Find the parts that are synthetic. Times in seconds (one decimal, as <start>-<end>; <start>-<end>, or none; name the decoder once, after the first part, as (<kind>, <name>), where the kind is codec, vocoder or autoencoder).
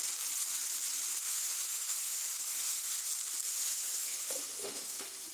1.2-3.1 (autoencoder, DAC-VAE); 3.5-5.3